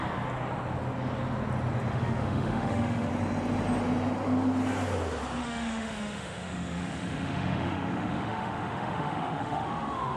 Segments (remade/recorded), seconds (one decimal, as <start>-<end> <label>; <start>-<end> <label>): 0.0-1.9 recorded; 1.9-3.1 remade; 3.1-5.4 recorded; 5.4-10.2 remade